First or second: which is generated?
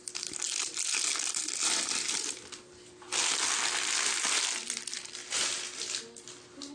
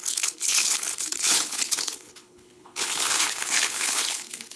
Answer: second